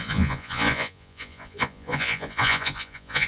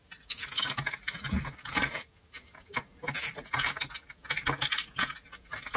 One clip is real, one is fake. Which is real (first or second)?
second